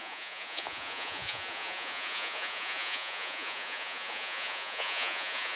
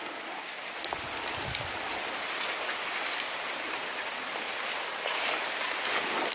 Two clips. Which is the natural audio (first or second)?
second